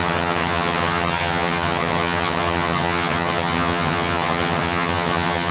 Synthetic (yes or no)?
yes